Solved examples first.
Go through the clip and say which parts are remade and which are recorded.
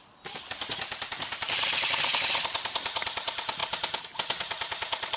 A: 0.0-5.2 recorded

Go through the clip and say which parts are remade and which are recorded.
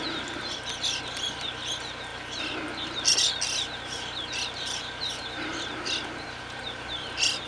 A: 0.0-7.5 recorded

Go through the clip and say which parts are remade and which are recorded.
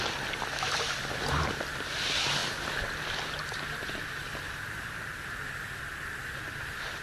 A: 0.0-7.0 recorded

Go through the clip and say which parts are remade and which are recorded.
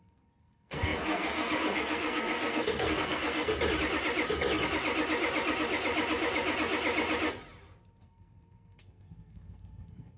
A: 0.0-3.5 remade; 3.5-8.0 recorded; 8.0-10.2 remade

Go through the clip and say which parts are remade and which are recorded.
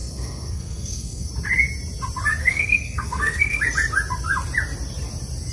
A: 0.0-1.3 remade; 1.3-2.4 recorded; 2.4-3.6 remade; 3.6-5.5 recorded